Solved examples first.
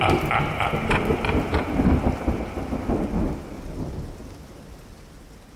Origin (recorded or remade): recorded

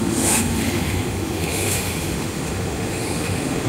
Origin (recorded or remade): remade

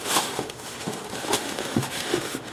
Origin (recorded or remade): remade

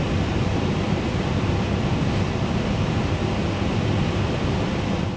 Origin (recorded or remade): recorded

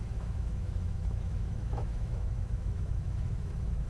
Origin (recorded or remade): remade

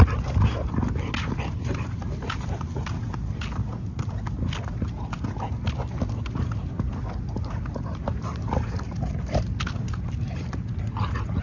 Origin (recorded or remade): recorded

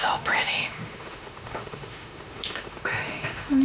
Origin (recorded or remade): remade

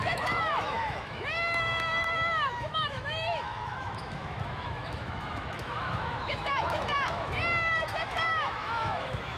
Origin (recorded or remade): remade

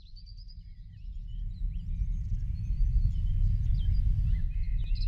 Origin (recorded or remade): recorded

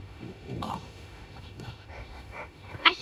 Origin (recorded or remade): remade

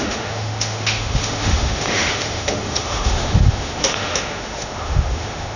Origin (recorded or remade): remade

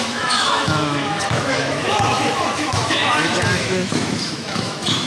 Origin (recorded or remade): remade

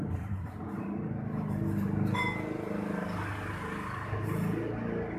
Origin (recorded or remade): recorded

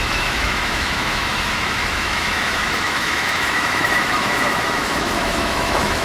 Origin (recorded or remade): remade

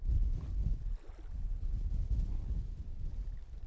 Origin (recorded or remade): recorded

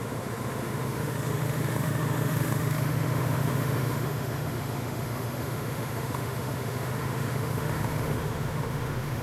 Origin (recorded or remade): remade